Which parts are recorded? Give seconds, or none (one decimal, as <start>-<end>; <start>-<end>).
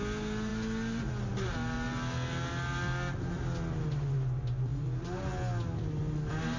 0.0-6.6